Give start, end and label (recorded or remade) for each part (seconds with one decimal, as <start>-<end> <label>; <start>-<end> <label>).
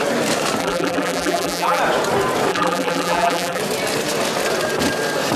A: 0.0-0.6 recorded; 0.6-1.8 remade; 1.8-2.5 recorded; 2.5-3.6 remade; 3.6-5.4 recorded